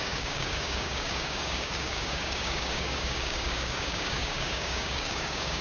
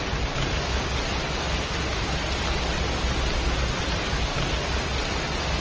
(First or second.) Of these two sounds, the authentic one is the second